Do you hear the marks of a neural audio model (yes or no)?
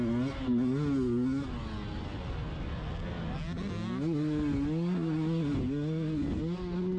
no